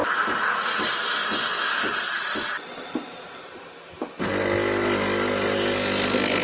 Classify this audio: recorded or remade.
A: recorded